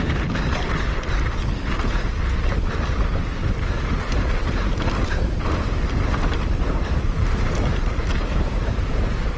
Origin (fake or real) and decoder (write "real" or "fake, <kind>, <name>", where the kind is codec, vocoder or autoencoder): real